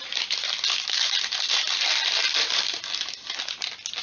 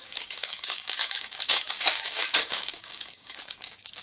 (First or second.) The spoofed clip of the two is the second